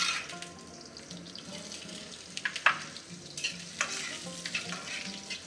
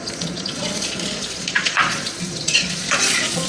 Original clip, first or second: first